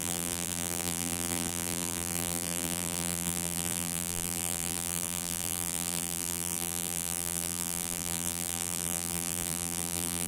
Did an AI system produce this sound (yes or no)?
yes